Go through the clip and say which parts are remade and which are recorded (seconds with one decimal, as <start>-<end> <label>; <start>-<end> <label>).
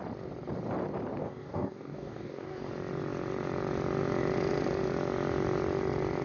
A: 0.0-1.2 recorded; 1.2-2.7 remade; 2.7-6.2 recorded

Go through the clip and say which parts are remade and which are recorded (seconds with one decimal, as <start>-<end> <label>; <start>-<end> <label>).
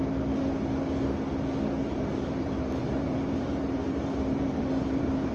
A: 0.0-1.8 recorded; 1.8-5.3 remade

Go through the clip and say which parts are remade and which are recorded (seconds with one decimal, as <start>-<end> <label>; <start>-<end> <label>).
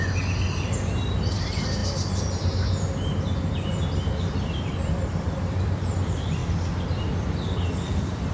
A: 0.0-1.8 remade; 1.8-4.4 recorded; 4.4-6.4 remade; 6.4-7.9 recorded; 7.9-8.3 remade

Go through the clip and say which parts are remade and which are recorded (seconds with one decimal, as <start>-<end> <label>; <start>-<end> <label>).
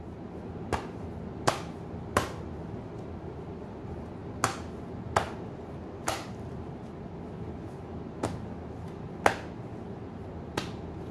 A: 0.0-11.1 recorded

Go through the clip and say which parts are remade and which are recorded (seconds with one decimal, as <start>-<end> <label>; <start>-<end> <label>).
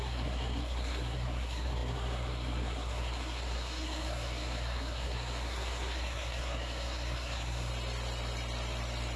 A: 0.0-7.7 remade; 7.7-9.2 recorded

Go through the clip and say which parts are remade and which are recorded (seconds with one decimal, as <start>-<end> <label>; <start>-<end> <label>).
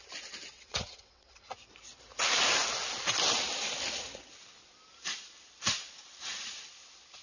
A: 0.0-0.5 recorded; 0.5-1.5 remade; 1.5-7.2 recorded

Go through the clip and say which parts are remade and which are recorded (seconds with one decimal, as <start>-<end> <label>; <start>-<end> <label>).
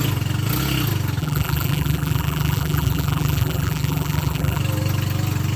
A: 0.0-1.2 recorded; 1.2-4.6 remade; 4.6-5.6 recorded